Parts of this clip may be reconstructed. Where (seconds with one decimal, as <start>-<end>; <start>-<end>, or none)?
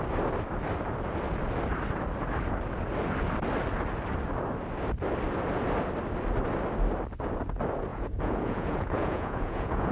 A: 7.9-9.9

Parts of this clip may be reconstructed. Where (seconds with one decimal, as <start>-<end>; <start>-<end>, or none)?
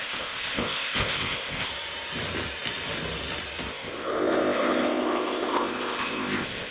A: 0.0-1.7; 3.7-6.7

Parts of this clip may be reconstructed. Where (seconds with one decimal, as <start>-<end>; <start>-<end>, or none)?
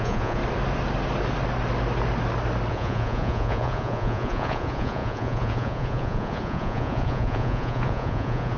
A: 0.0-0.4; 2.7-8.6